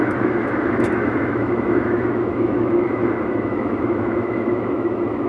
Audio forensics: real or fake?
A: fake